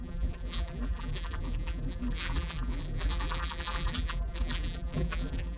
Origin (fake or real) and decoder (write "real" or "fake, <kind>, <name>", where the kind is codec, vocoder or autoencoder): fake, vocoder, BigVGAN v2